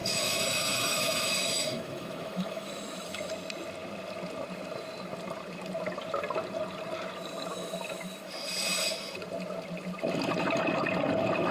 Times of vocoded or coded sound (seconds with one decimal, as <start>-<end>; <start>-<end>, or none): 0.0-3.3; 7.5-8.3

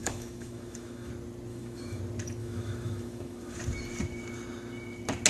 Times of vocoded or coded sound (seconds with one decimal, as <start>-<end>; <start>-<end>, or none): 0.0-1.1; 1.5-2.0; 2.4-3.6

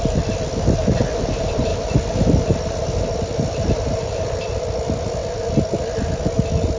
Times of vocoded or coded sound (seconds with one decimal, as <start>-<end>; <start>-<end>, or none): 0.0-1.7; 3.0-5.2; 6.2-6.8

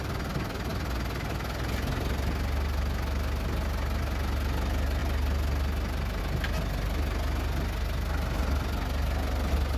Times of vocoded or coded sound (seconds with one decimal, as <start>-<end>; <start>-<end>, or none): none

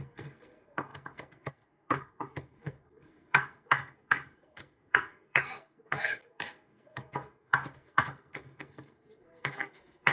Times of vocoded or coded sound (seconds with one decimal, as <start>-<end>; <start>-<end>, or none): 0.0-10.1